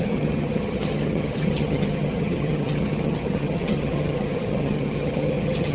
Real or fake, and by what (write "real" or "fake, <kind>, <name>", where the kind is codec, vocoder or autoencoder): fake, vocoder, HiFi-GAN